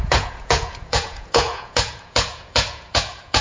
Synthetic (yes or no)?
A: yes